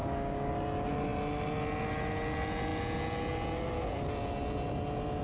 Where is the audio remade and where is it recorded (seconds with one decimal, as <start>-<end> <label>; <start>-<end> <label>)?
0.0-0.5 remade; 0.5-5.2 recorded